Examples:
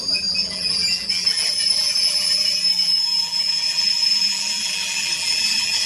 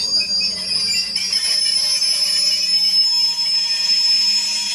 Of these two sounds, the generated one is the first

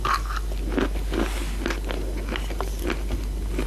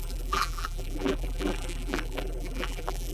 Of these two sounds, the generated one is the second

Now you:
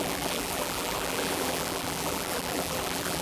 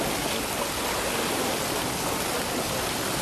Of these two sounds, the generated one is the first